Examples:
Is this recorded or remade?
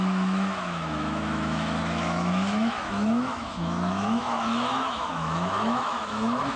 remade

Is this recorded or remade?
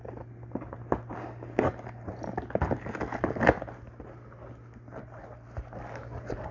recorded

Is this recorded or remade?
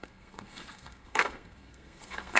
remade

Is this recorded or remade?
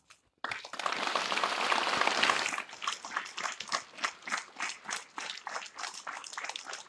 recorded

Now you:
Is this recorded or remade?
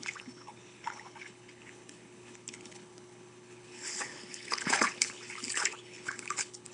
remade